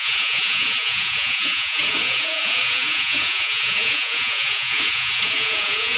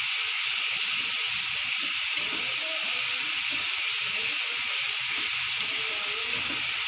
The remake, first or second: first